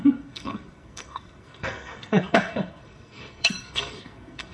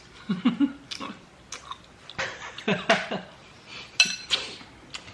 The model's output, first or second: first